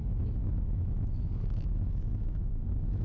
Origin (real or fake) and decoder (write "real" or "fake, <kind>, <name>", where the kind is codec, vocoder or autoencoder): fake, autoencoder, DAC-VAE